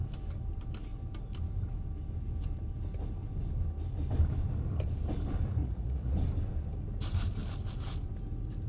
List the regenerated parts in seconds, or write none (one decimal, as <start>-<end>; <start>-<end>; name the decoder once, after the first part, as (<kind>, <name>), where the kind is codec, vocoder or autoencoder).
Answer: 5.6-6.1 (vocoder, Vocos)